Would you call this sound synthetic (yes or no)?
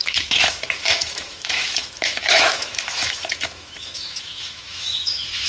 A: yes